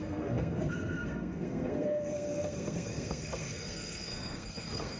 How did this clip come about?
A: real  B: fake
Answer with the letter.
B